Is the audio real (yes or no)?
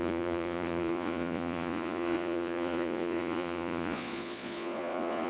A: no